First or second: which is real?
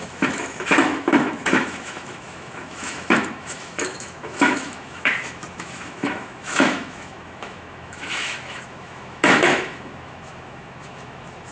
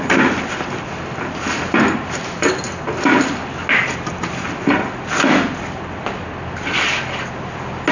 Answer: second